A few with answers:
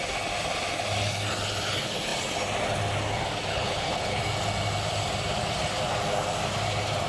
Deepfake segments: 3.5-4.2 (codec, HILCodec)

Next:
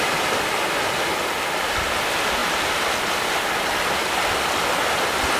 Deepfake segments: none